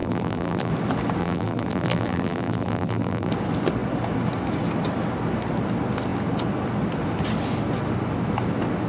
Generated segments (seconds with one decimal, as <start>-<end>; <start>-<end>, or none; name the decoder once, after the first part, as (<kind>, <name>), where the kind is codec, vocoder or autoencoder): 0.0-0.7 (vocoder, BigVGAN v2); 1.2-3.3